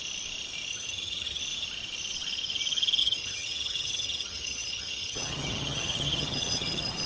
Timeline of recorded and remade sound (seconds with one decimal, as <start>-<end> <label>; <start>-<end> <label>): 0.0-0.7 recorded; 0.7-1.4 remade; 1.4-3.0 recorded; 3.0-7.1 remade